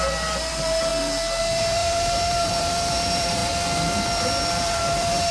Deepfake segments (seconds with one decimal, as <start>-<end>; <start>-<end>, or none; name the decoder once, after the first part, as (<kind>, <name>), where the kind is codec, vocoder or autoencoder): 0.0-0.9 (vocoder, BigVGAN v2); 1.4-3.4; 4.5-5.3